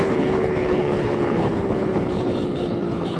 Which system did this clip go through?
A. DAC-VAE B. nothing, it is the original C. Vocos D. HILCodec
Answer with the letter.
D